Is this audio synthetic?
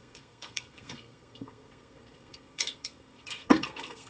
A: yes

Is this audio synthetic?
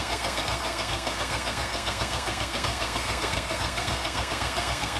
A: yes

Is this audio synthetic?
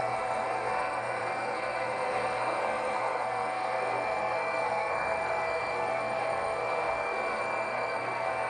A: yes